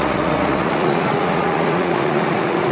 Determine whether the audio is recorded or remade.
remade